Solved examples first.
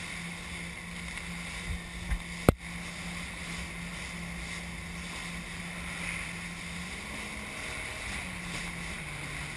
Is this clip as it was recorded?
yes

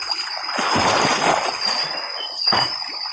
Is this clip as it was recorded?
yes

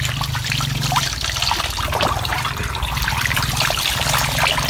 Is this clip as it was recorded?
yes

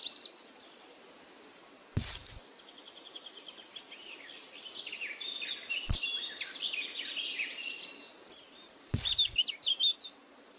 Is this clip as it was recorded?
yes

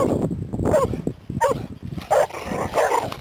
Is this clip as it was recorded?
yes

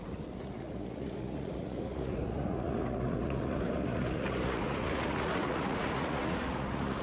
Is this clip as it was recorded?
no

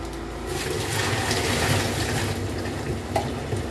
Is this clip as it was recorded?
yes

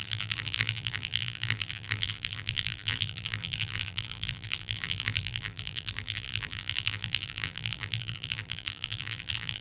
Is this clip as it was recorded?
no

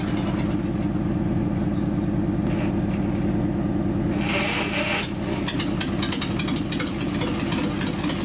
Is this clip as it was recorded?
yes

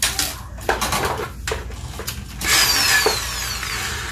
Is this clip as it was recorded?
yes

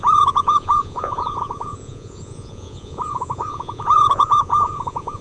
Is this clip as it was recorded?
no